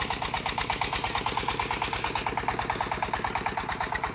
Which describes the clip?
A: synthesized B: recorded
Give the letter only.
B